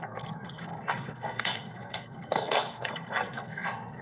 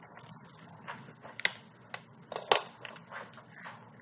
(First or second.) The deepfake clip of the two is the first